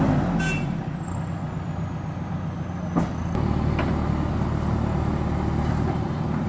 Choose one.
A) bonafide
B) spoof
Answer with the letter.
A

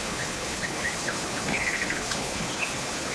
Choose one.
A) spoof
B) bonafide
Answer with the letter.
A